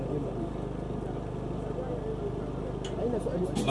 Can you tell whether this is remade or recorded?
recorded